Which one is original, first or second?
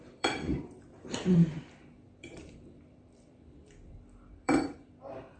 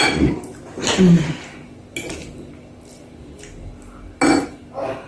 second